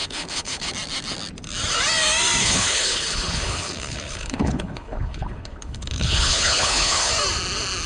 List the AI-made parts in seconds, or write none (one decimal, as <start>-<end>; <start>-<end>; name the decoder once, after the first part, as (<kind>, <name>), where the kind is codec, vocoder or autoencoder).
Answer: 0.0-0.7 (codec, HILCodec); 2.4-7.1